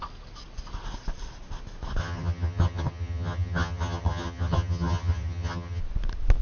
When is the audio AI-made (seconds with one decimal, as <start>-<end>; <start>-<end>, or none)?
2.0-5.8